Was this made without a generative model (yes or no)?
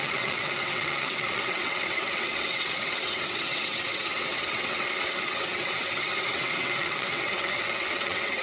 no